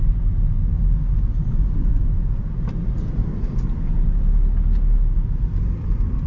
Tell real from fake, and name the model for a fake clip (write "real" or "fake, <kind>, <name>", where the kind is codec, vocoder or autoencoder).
real